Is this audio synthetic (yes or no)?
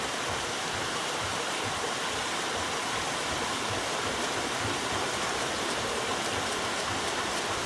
yes